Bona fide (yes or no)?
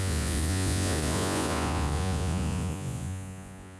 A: no